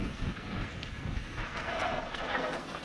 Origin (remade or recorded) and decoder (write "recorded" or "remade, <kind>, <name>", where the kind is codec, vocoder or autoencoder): remade, codec, SNAC